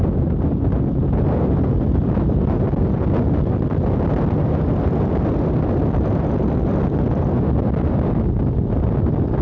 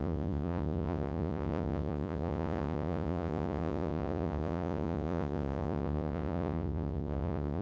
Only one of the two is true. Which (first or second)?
first